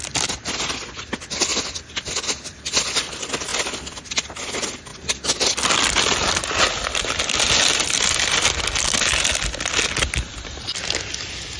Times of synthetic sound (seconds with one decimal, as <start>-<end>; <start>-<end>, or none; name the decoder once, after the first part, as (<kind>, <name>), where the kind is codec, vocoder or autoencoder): none